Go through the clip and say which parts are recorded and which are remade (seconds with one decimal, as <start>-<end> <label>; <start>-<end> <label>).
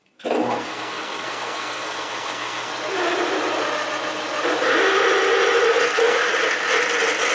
0.0-2.7 remade; 2.7-5.7 recorded; 5.7-6.3 remade; 6.3-7.3 recorded